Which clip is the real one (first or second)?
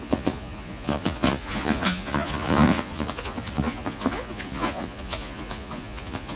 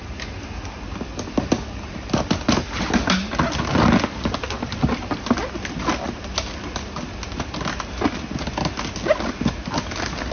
second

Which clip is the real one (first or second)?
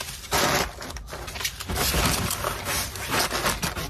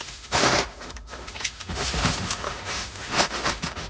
first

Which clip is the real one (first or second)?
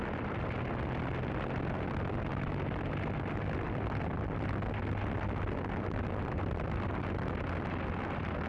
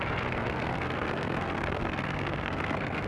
first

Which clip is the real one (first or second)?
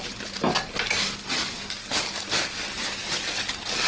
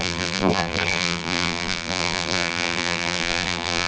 first